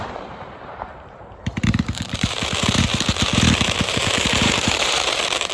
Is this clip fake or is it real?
fake